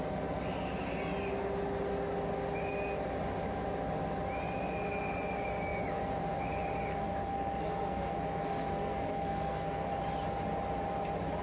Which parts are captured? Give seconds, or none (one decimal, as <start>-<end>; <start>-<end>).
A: 0.0-6.9; 10.0-11.4